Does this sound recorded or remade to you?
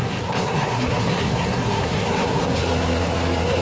remade